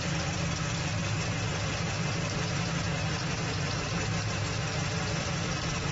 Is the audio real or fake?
fake